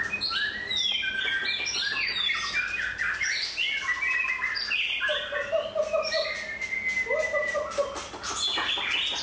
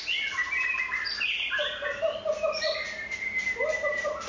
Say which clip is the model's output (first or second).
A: second